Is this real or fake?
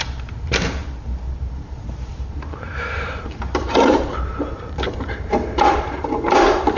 fake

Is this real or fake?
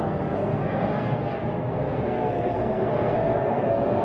fake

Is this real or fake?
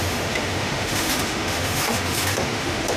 fake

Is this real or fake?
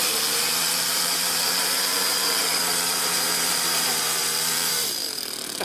fake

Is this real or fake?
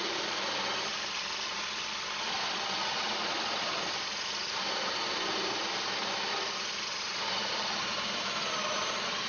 real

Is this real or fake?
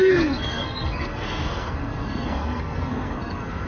fake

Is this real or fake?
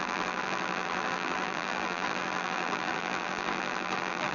fake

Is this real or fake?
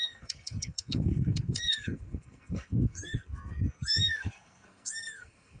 fake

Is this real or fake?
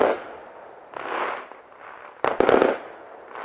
real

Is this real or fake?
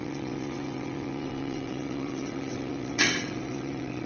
fake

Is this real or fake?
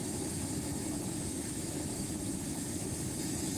fake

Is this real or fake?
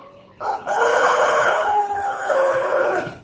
fake